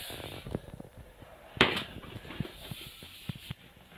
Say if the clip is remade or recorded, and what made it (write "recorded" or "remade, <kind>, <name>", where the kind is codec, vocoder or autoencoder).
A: remade, vocoder, BigVGAN v2